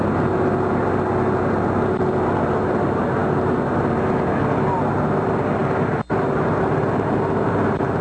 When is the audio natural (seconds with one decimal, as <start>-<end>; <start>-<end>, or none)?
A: 0.0-8.0